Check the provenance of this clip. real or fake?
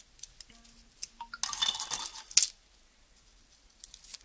real